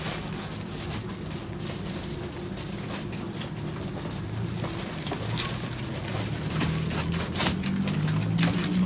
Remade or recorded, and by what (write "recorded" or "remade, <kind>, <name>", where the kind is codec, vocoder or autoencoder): recorded